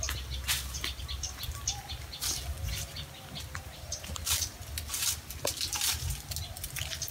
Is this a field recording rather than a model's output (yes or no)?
yes